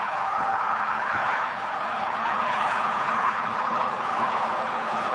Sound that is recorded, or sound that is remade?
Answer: remade